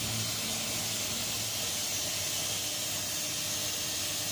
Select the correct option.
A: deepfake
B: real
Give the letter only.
B